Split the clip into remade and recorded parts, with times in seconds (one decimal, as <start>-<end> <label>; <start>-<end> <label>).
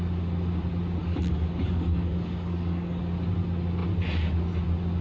0.0-1.0 recorded; 1.0-3.0 remade; 3.0-5.0 recorded